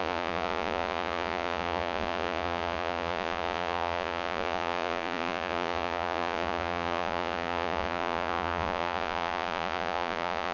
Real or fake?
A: fake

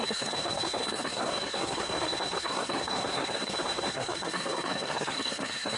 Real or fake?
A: fake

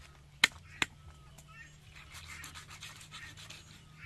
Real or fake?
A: real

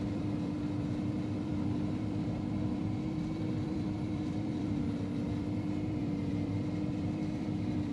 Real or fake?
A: fake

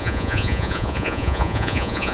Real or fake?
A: fake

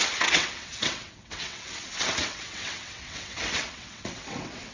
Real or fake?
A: fake